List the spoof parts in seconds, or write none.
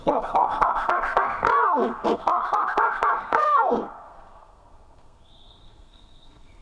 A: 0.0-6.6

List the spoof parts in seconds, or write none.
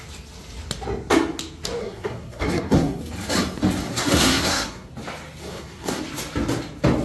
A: 1.8-3.0; 3.9-4.9; 5.4-6.0